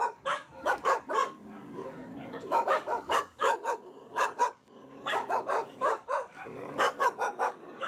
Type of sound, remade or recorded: remade